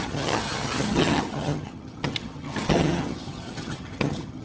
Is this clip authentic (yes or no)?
no